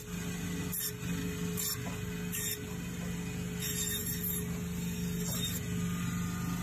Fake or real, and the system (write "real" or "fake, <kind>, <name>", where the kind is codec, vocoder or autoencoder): real